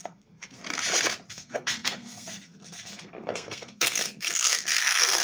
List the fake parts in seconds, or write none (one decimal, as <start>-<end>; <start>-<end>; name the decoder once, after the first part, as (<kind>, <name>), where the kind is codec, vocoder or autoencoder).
0.0-0.6 (codec, SNAC); 1.3-5.2